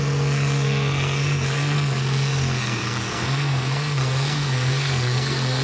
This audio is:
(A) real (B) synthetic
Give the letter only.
B